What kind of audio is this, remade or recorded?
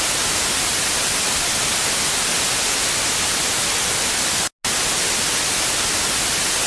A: recorded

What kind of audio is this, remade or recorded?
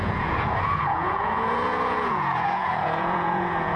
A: remade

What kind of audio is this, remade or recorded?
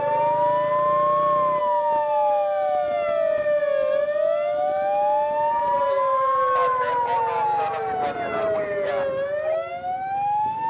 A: recorded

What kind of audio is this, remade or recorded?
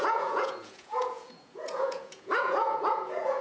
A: remade